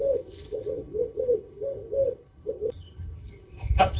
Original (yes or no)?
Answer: no